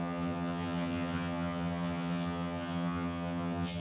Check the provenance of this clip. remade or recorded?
remade